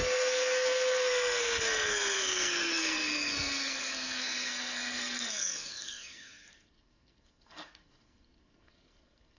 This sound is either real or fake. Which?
fake